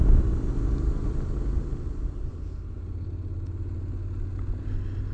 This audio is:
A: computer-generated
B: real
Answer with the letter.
B